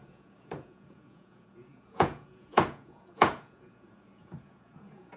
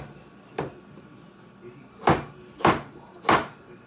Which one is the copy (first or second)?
first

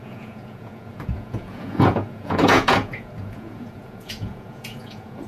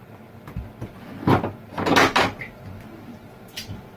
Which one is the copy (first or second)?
first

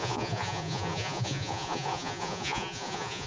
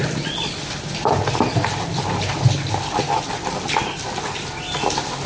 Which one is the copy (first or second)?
first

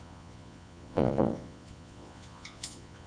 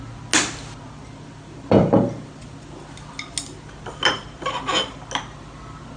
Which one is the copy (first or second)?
first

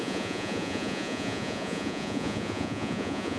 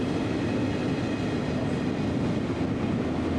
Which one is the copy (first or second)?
first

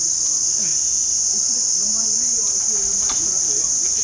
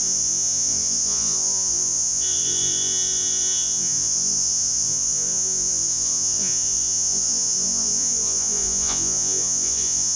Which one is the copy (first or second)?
second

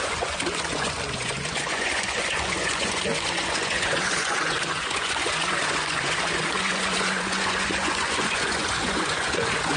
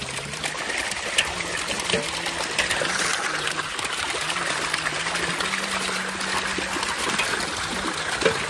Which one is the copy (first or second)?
first